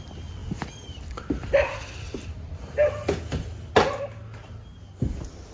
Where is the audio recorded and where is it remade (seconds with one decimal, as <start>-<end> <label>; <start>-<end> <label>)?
0.0-0.4 recorded; 0.4-3.7 remade; 3.7-5.5 recorded